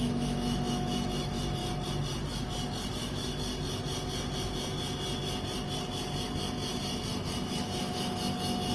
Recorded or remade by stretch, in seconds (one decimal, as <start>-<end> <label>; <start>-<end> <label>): 0.0-1.6 remade; 1.6-2.9 recorded; 2.9-3.5 remade; 3.5-6.8 recorded; 6.8-8.7 remade